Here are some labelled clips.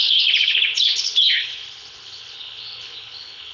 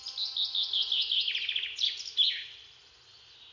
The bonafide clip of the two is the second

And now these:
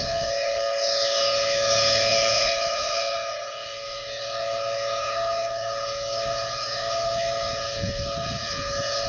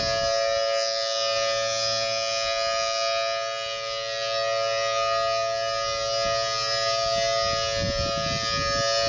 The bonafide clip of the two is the second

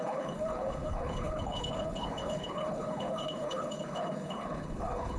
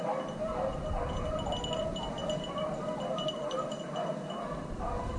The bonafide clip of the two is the second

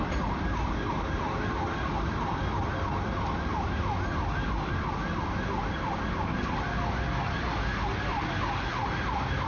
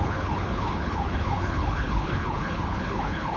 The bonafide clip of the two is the first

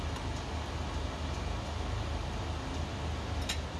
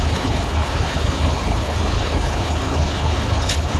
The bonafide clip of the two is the first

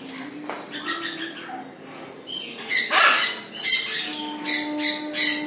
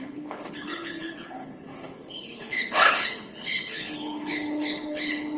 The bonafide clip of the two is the first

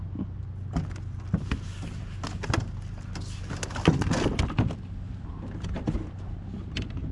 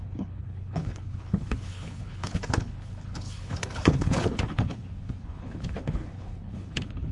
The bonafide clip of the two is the first